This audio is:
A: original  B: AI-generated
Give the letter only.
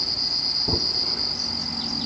A